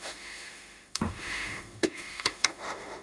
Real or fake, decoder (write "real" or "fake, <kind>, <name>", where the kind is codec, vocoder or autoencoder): fake, autoencoder, DAC-VAE